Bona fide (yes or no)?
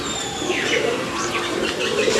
no